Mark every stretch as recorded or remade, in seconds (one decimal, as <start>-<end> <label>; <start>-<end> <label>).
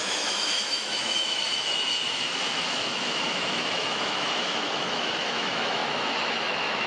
0.0-6.9 remade